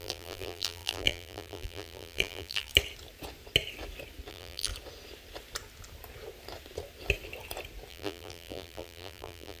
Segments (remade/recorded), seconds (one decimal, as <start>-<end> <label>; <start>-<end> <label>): 0.0-2.7 remade; 2.7-4.3 recorded; 4.3-4.7 remade; 4.7-7.9 recorded; 7.9-9.6 remade